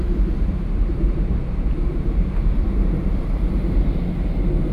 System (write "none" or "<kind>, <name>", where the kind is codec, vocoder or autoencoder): vocoder, BigVGAN v2